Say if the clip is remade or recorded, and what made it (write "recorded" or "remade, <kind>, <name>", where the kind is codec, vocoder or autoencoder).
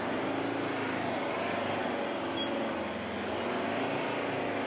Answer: recorded